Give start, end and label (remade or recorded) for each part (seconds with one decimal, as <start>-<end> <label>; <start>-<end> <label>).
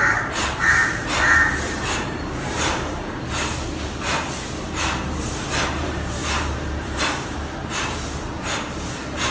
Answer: 0.0-9.3 remade